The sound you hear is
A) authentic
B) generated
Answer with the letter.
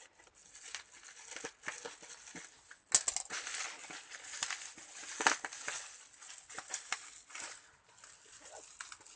A